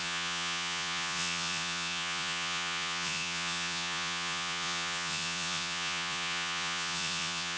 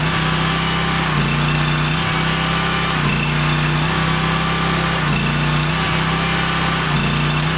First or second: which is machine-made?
first